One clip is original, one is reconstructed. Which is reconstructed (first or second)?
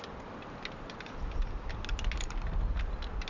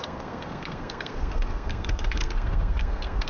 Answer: second